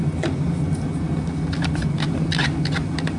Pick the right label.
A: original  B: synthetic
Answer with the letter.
A